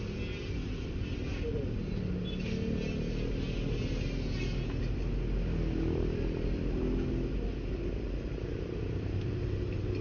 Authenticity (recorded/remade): recorded